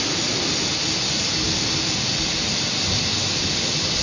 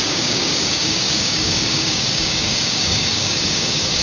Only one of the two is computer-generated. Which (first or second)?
second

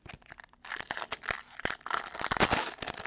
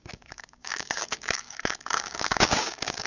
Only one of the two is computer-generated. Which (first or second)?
second